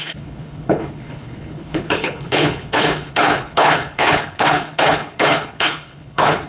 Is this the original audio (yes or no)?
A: no